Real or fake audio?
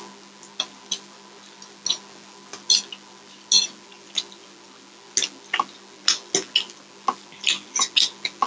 real